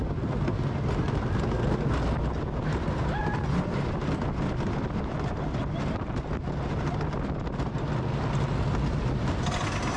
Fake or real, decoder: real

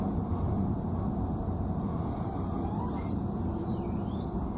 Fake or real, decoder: real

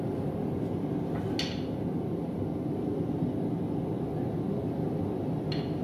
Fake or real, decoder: real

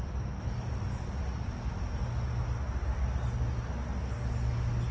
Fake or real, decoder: real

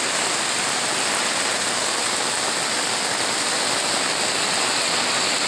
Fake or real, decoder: real